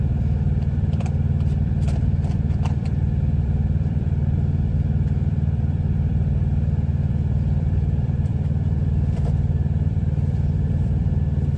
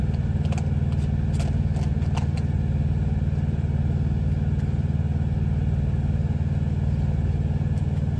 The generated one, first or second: first